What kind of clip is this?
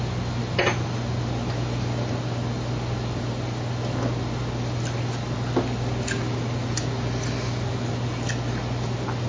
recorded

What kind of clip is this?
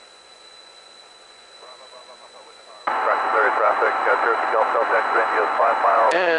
remade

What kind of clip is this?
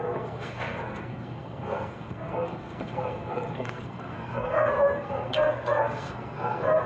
remade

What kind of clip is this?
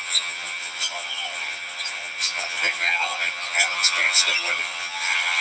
remade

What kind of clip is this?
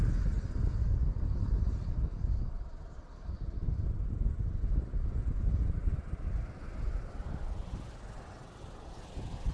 recorded